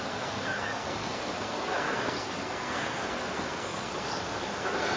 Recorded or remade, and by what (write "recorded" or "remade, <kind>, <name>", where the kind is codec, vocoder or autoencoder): remade, codec, SNAC